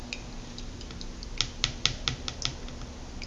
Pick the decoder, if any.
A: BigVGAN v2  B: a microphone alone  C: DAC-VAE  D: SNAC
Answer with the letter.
B